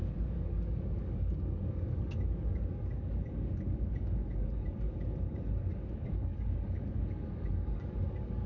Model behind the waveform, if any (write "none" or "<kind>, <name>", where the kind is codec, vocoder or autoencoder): codec, DAC